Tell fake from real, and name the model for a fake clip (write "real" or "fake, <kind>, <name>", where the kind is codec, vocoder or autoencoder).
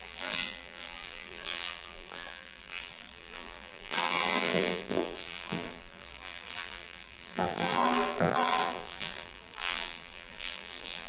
fake, vocoder, BigVGAN v2